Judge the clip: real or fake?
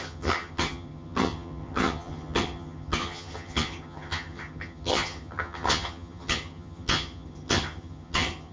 fake